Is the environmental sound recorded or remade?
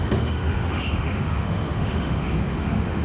remade